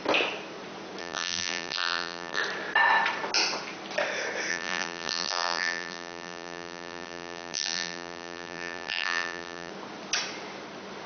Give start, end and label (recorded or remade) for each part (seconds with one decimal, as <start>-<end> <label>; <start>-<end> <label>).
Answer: 0.0-1.0 recorded; 1.0-2.4 remade; 2.4-4.5 recorded; 4.5-9.7 remade; 9.7-11.1 recorded